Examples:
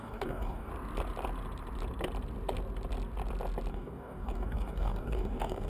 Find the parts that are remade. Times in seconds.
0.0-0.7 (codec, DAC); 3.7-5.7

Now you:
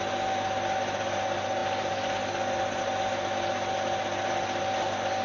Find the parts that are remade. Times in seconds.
none